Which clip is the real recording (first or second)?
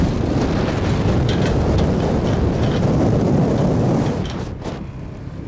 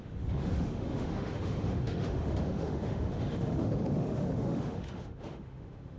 first